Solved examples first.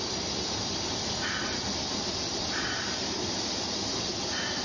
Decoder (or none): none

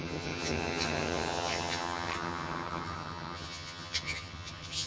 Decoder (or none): vocoder, HiFi-GAN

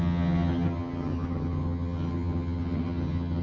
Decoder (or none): vocoder, HiFi-GAN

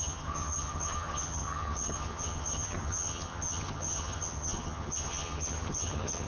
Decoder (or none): vocoder, HiFi-GAN